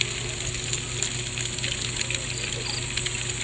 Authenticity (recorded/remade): recorded